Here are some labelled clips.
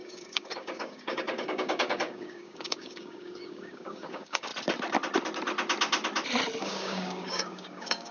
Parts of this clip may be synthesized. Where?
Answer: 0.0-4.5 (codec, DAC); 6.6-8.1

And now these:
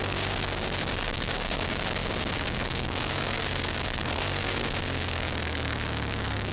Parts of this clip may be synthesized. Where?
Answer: 0.0-6.5 (codec, DAC)

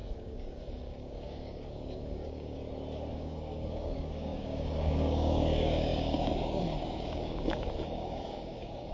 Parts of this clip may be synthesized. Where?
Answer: 0.0-2.6 (codec, DAC); 3.1-8.9

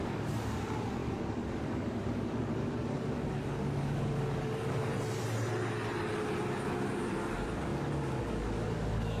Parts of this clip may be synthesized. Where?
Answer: 0.0-4.9 (codec, DAC); 7.0-9.2

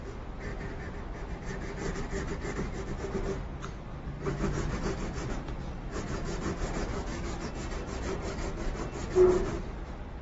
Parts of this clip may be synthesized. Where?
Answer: 6.9-7.5 (codec, DAC)

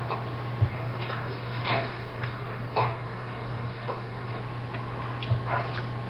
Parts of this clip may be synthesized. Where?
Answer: 0.7-4.4 (codec, DAC)

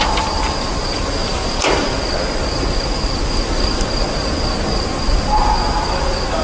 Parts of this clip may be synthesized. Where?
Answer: none